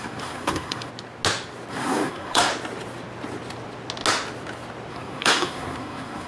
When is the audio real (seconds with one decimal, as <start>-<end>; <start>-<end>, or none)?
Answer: 0.9-1.7; 2.5-4.9

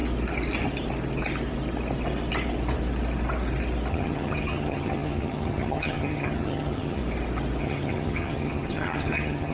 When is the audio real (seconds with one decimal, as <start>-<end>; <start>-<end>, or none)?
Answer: 0.0-3.9; 7.0-7.6